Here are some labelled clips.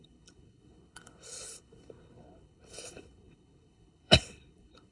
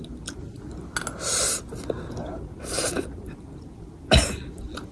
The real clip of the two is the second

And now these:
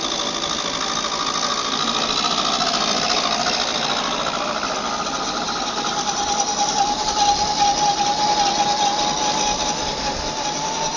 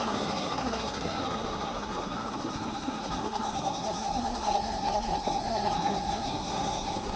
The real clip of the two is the first